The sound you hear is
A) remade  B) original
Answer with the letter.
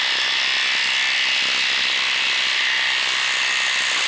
B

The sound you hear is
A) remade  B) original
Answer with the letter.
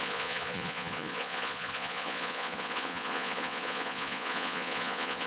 A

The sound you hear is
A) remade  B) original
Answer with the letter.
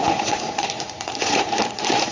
A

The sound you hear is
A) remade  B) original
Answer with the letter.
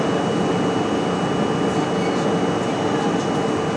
B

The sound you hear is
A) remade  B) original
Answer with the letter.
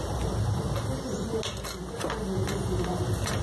B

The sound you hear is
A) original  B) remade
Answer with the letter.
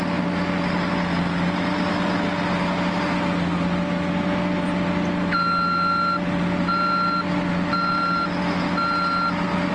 A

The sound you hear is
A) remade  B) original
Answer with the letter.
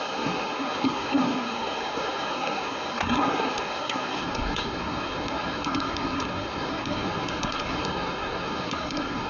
A